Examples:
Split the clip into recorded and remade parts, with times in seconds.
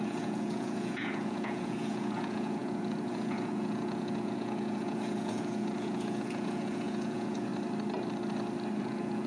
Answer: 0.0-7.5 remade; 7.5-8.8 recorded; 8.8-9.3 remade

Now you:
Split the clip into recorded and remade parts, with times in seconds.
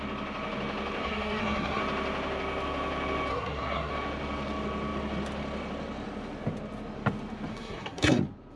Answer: 0.0-1.0 recorded; 1.0-1.8 remade; 1.8-3.3 recorded; 3.3-3.9 remade; 3.9-7.5 recorded; 7.5-8.2 remade; 8.2-8.6 recorded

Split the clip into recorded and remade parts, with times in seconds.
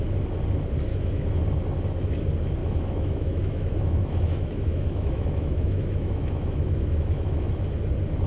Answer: 0.0-0.9 recorded; 0.9-1.4 remade; 1.4-2.6 recorded; 2.6-7.5 remade; 7.5-8.3 recorded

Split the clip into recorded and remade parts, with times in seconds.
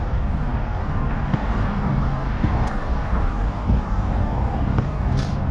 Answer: 0.0-5.5 remade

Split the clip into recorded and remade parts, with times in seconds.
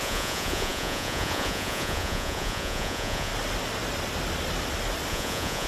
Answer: 0.0-3.3 remade; 3.3-5.1 recorded; 5.1-5.7 remade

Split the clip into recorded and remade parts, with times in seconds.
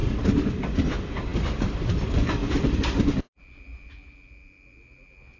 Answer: 0.0-0.5 remade; 0.5-5.4 recorded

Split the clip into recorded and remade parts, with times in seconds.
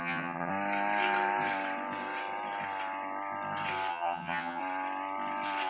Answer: 0.0-0.5 remade; 0.5-3.9 recorded; 3.9-4.6 remade; 4.6-5.7 recorded